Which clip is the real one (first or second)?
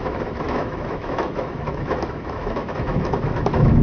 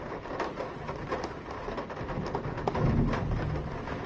second